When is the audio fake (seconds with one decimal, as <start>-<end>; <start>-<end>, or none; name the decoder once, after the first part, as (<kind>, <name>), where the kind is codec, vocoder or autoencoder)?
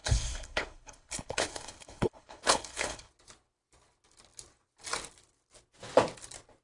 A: 0.0-3.1 (codec, HILCodec)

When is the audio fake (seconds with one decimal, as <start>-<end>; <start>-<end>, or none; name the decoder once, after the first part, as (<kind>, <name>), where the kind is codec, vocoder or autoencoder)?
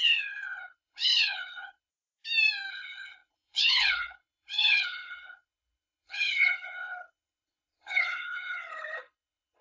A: 0.0-1.9 (codec, HILCodec); 2.7-9.6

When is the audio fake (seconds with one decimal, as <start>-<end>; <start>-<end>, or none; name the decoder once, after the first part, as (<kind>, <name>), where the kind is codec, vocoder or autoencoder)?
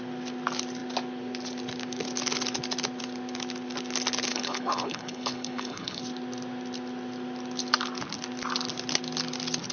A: 4.3-6.0 (codec, HILCodec)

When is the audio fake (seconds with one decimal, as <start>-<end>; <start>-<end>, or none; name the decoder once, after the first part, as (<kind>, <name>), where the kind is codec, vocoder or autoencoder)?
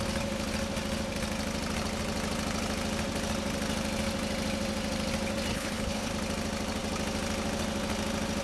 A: 5.5-6.1 (codec, HILCodec)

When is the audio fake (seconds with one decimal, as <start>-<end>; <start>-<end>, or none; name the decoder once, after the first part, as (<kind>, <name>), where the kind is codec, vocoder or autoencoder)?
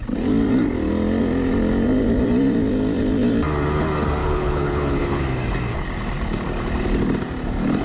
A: 4.2-5.2 (codec, HILCodec)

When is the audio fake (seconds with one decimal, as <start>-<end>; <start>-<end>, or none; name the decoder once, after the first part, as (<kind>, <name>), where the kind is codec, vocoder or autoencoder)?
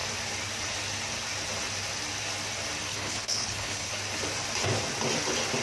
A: 2.9-3.9 (codec, HILCodec)